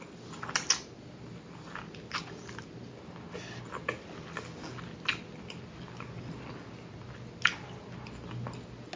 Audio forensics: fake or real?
real